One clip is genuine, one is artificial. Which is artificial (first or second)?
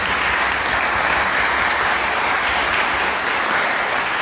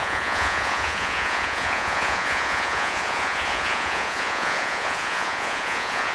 second